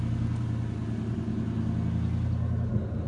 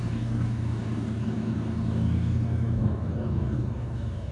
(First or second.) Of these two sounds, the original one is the first